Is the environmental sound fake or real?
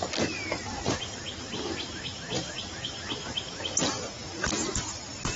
real